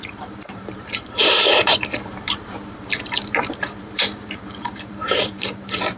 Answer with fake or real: fake